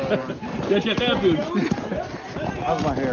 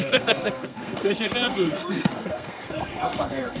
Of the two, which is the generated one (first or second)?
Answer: second